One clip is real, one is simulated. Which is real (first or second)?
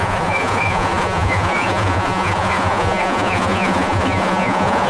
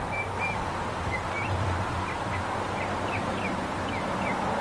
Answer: second